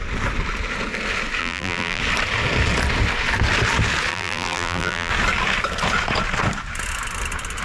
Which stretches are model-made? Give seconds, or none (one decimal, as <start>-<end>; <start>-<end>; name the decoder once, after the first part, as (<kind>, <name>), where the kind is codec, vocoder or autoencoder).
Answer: 1.4-2.0 (vocoder, BigVGAN v2); 4.1-5.1